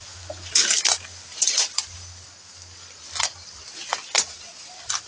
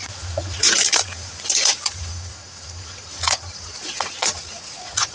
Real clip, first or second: first